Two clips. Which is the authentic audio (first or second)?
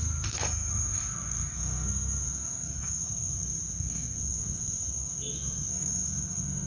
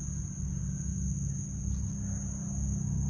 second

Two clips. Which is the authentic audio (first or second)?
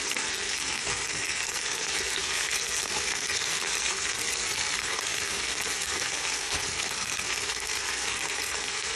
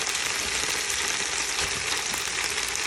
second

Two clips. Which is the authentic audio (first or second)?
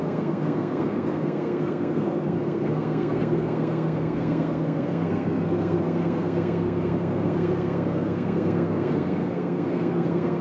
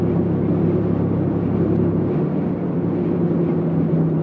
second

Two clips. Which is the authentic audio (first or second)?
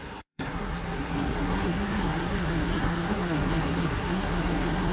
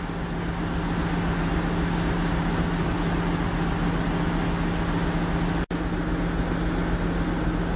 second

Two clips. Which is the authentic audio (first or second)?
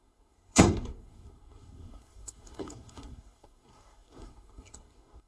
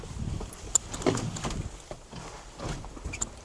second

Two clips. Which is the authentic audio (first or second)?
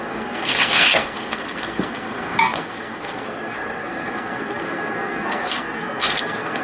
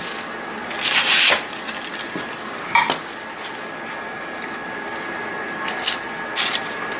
second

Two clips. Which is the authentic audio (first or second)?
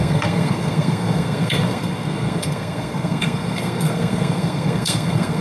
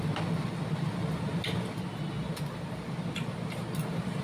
second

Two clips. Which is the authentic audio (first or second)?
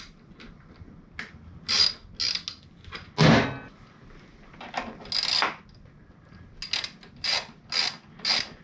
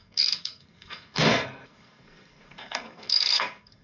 first